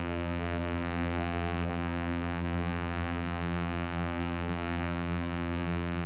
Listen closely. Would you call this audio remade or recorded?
remade